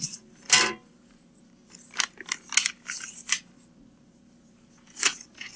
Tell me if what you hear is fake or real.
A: real